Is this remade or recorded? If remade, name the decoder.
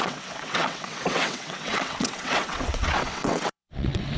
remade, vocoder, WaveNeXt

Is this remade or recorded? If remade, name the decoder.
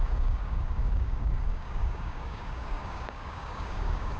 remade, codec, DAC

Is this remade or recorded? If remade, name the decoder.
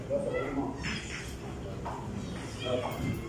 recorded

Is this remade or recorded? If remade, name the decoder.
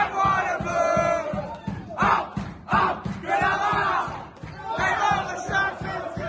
recorded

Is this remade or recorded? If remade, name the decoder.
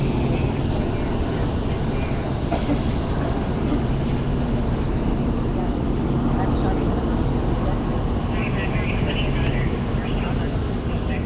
recorded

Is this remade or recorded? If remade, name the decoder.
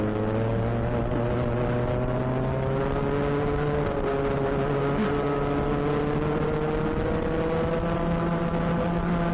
recorded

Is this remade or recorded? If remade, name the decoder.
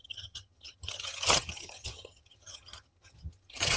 remade, vocoder, HiFi-GAN